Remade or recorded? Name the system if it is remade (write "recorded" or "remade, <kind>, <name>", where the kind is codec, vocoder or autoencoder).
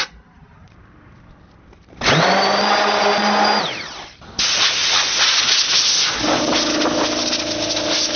recorded